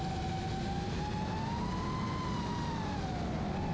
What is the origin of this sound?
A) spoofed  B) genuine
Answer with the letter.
B